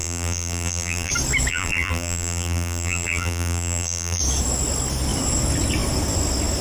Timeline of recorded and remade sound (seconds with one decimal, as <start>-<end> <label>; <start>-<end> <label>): 0.0-1.1 remade; 1.1-1.5 recorded; 1.5-4.2 remade; 4.2-6.6 recorded